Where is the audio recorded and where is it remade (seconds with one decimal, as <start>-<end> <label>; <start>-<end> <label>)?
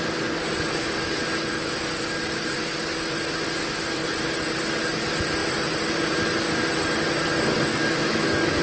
0.0-7.7 recorded; 7.7-8.6 remade